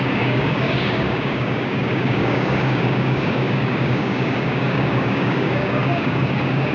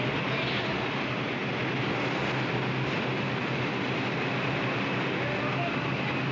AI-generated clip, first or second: first